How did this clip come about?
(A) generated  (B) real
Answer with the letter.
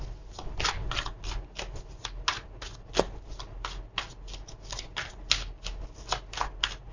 B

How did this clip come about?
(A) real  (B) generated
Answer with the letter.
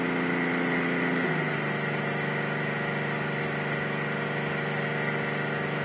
A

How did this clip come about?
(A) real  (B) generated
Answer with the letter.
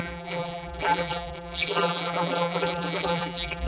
B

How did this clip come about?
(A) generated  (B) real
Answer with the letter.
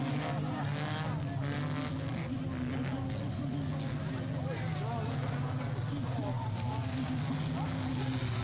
B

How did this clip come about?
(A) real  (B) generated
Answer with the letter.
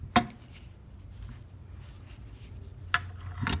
A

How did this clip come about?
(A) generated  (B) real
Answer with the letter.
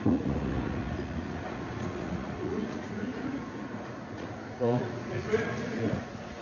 A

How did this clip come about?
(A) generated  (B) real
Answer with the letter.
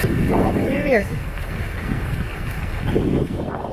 A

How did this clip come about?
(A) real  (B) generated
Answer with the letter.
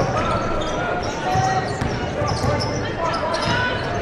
A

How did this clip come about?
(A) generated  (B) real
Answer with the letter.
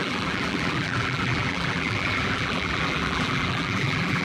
A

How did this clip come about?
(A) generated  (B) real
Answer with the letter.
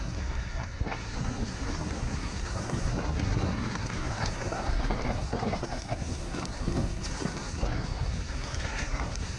A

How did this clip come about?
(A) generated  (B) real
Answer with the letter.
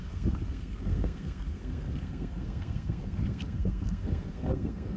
A